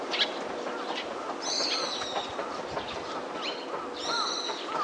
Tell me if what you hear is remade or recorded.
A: recorded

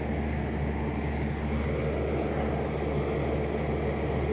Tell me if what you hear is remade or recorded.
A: recorded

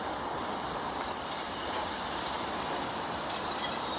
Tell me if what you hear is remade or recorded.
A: recorded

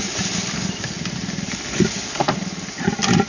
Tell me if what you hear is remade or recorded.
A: recorded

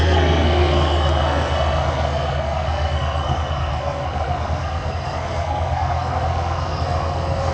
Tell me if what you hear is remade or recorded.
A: remade